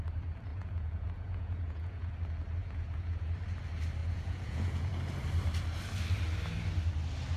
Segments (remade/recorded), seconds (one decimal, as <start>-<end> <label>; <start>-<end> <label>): 0.0-0.5 recorded; 0.5-2.1 remade; 2.1-2.6 recorded; 2.6-3.2 remade; 3.2-4.0 recorded; 4.0-5.0 remade; 5.0-7.4 recorded